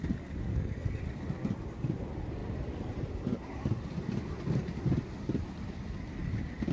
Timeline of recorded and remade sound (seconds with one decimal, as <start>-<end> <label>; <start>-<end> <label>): 0.0-0.5 recorded; 0.5-1.0 remade; 1.0-6.7 recorded